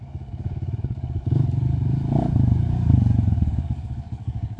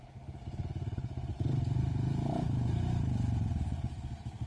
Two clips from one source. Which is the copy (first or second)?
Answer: first